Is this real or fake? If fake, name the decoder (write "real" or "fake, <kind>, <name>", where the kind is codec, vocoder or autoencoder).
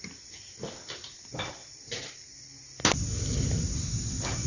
real